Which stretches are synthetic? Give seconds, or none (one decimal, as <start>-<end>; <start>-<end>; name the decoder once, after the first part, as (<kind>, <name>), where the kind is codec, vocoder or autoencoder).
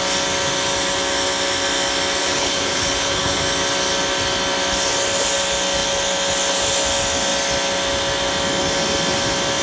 2.2-3.4 (codec, HILCodec)